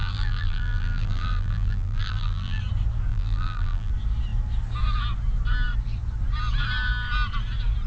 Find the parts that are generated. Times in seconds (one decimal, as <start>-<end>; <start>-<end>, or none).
0.0-2.6; 3.1-3.9